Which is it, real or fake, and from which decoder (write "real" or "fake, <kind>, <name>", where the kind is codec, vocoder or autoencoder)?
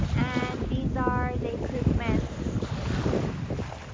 real